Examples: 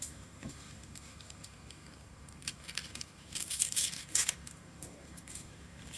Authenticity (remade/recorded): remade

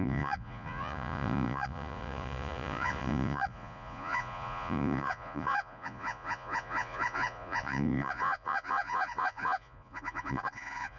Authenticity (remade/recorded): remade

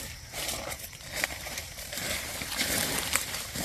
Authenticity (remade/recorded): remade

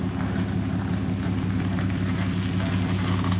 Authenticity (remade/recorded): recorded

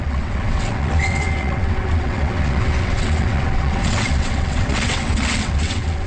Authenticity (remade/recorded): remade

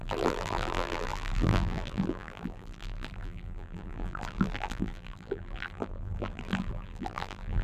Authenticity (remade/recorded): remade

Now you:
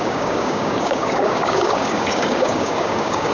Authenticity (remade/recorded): remade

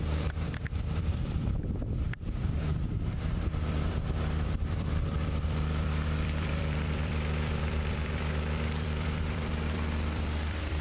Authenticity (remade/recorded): remade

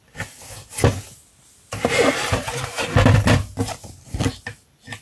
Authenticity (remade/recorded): recorded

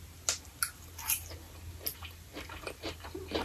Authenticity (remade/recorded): recorded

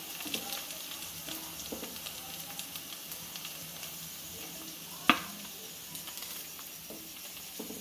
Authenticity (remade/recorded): recorded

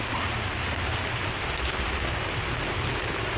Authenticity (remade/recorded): recorded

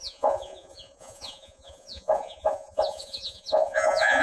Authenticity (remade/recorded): remade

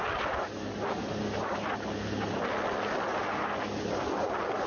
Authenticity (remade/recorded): recorded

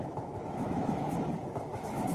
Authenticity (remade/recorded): remade